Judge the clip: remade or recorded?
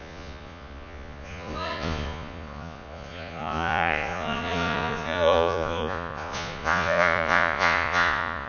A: remade